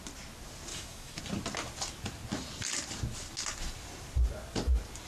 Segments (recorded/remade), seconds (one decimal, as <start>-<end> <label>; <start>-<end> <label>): 0.0-0.7 recorded; 0.7-1.2 remade; 1.2-5.1 recorded